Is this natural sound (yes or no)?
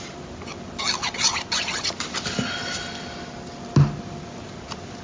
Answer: yes